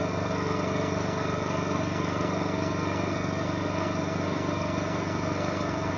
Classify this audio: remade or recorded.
remade